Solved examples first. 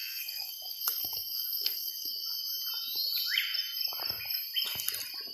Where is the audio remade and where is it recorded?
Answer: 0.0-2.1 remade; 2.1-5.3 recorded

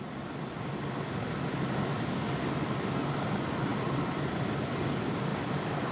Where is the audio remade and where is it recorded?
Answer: 0.0-3.7 recorded; 3.7-4.3 remade; 4.3-5.3 recorded; 5.3-5.9 remade

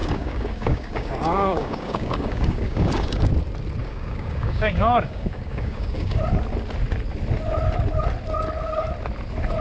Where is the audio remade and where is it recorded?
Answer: 0.0-3.3 remade; 3.3-3.8 recorded; 3.8-6.2 remade; 6.2-9.6 recorded